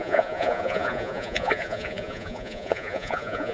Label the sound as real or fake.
fake